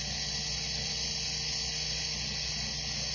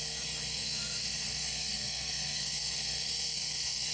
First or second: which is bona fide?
first